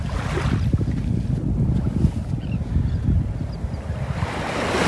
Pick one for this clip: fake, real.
real